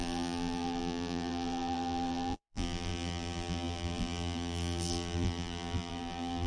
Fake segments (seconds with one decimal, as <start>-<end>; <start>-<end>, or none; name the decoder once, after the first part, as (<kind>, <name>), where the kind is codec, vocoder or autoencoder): 0.0-6.5 (vocoder, BigVGAN v2)